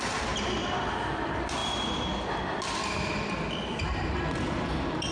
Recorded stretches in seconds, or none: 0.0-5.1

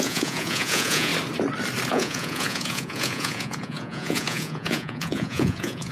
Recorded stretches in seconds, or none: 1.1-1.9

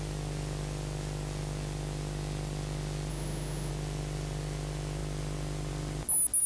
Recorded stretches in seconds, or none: 0.0-3.1; 3.7-6.5